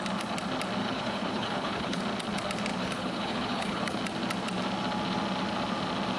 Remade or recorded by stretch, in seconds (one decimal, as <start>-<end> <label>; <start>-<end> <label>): 0.0-0.8 recorded; 0.8-2.0 remade; 2.0-2.7 recorded; 2.7-4.0 remade; 4.0-6.2 recorded